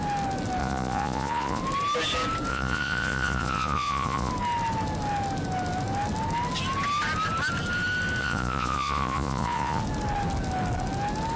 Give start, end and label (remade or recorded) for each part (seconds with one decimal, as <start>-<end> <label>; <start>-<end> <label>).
0.0-0.6 recorded; 0.6-1.6 remade; 1.6-2.5 recorded; 2.5-4.3 remade; 4.3-8.2 recorded; 8.2-9.8 remade; 9.8-11.4 recorded